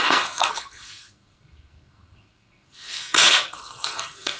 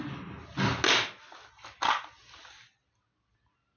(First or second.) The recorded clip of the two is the second